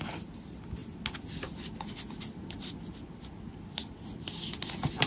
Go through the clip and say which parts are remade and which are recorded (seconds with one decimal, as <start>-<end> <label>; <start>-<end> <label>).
0.0-5.1 recorded